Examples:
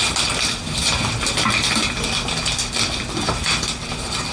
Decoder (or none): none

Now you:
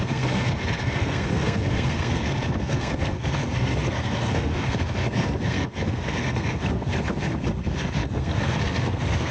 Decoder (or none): codec, SNAC